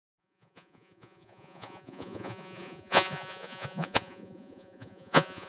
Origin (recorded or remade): remade